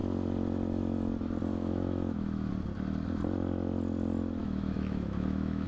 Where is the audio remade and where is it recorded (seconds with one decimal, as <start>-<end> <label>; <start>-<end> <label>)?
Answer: 0.0-1.5 recorded; 1.5-2.5 remade; 2.5-4.4 recorded; 4.4-5.7 remade